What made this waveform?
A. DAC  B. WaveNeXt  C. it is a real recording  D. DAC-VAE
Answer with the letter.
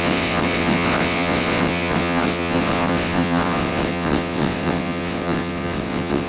B